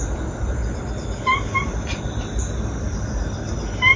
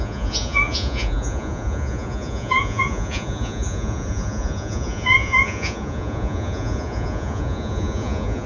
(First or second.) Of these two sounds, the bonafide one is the first